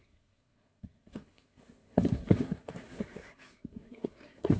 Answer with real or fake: fake